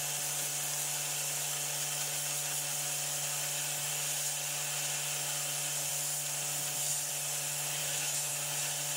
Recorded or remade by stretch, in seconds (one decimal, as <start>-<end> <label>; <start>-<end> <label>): 0.0-7.8 recorded; 7.8-8.3 remade; 8.3-9.0 recorded